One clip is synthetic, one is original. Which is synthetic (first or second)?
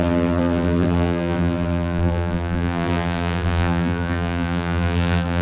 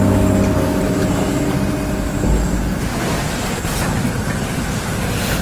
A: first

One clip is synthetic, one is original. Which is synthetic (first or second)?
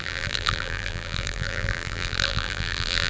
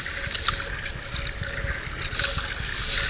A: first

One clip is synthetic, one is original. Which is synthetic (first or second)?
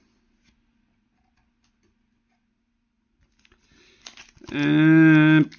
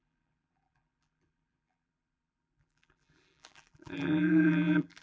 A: second